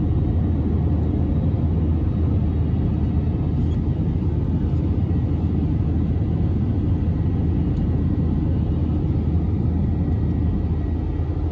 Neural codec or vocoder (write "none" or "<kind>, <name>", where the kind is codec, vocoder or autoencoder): none